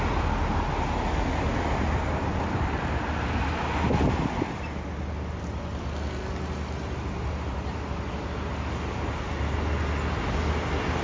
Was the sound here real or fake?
real